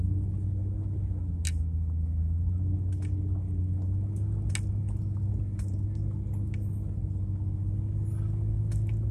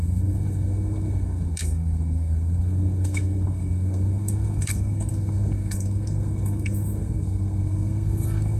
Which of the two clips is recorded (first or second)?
first